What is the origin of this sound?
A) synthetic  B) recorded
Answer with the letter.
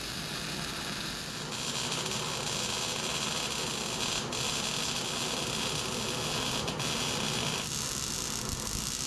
B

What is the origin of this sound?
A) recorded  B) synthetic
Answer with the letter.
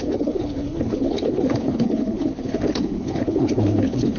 B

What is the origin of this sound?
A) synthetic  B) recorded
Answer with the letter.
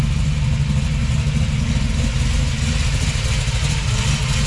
B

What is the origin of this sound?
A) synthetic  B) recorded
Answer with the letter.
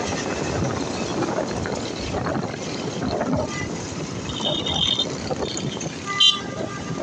B